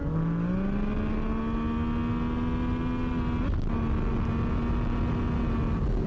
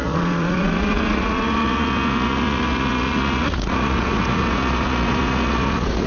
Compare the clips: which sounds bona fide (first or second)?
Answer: first